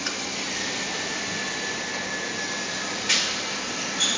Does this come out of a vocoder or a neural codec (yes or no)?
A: no